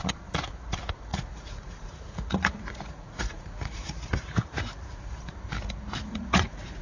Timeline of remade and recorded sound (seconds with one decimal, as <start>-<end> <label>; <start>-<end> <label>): 0.0-1.1 recorded; 1.1-5.2 remade; 5.2-6.1 recorded; 6.1-6.8 remade